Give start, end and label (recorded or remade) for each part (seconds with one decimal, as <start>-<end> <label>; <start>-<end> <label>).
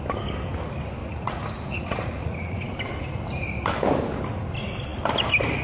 0.0-1.0 recorded; 1.0-2.7 remade; 2.7-5.6 recorded